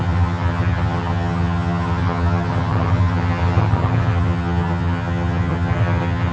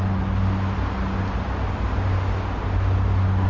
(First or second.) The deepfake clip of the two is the first